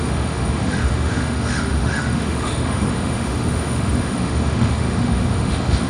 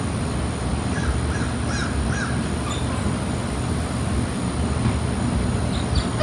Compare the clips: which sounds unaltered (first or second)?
second